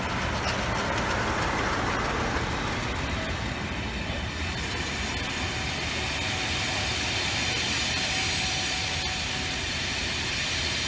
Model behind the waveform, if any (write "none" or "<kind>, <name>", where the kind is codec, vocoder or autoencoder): none